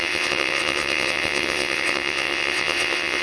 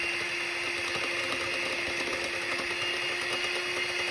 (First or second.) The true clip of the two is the second